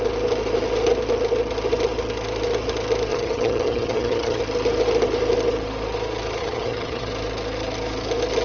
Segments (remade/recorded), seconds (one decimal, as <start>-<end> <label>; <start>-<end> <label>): 0.0-3.1 recorded; 3.1-4.4 remade; 4.4-6.4 recorded; 6.4-7.1 remade; 7.1-8.4 recorded